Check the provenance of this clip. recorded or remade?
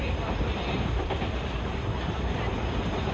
remade